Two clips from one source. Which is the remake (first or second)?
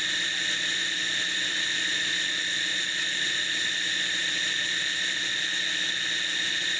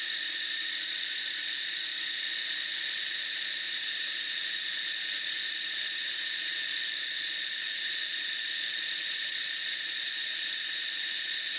second